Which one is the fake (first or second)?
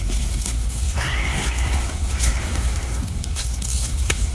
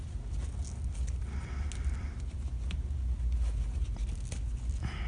first